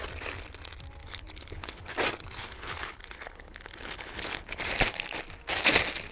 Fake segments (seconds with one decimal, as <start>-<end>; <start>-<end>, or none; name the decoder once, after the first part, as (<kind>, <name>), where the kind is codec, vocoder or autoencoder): 1.0-1.9 (codec, HILCodec); 2.4-4.6